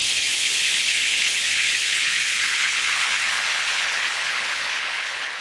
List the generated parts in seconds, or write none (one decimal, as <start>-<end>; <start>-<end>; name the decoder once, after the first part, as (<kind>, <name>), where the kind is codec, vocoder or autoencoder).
0.0-5.4 (codec, HILCodec)